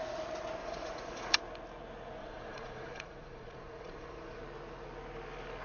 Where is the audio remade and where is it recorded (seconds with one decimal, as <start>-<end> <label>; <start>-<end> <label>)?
0.0-0.6 recorded; 0.6-1.4 remade; 1.4-2.2 recorded; 2.2-4.4 remade; 4.4-5.6 recorded